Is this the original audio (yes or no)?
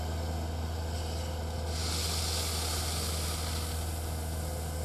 yes